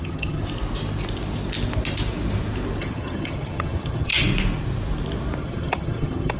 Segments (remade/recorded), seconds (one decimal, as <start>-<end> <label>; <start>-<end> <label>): 0.0-0.4 remade; 0.4-2.8 recorded; 2.8-4.1 remade; 4.1-5.4 recorded; 5.4-6.4 remade